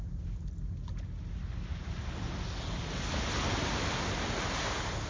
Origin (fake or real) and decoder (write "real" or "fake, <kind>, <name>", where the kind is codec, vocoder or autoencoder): real